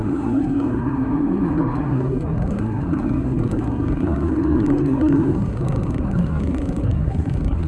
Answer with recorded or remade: remade